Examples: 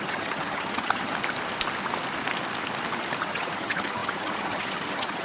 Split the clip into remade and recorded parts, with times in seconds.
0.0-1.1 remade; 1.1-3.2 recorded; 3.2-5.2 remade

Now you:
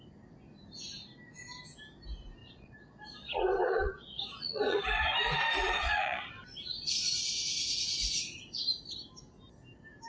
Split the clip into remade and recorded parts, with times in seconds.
0.0-2.4 recorded; 2.4-4.8 remade; 4.8-5.6 recorded; 5.6-6.3 remade; 6.3-10.1 recorded

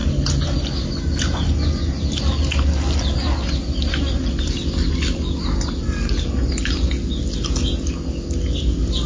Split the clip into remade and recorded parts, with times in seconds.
0.0-9.1 recorded

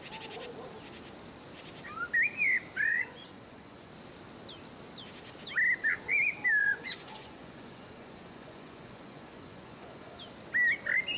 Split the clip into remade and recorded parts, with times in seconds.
0.0-2.9 recorded; 2.9-3.9 remade; 3.9-6.6 recorded; 6.6-10.2 remade; 10.2-11.2 recorded

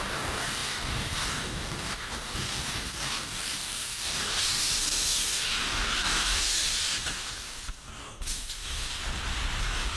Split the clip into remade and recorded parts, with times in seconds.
0.0-9.0 remade; 9.0-9.6 recorded; 9.6-10.0 remade

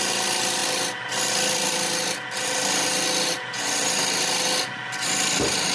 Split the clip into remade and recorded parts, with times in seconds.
0.0-5.7 recorded

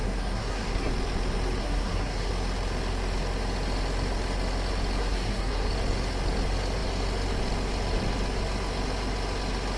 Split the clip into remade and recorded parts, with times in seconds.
0.0-0.9 remade; 0.9-1.6 recorded; 1.6-2.3 remade; 2.3-5.0 recorded; 5.0-5.7 remade; 5.7-9.8 recorded

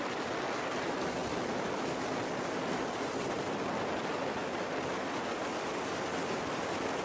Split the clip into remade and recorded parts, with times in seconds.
0.0-7.0 recorded